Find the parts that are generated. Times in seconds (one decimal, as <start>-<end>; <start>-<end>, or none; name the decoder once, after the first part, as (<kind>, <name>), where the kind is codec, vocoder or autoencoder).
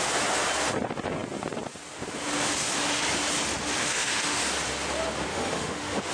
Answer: 3.8-4.4 (autoencoder, DAC-VAE); 5.3-6.1